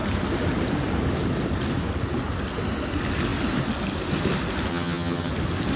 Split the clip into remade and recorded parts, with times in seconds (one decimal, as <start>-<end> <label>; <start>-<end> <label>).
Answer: 0.0-4.7 recorded; 4.7-5.3 remade; 5.3-5.8 recorded